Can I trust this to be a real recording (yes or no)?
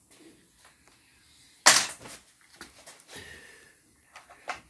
yes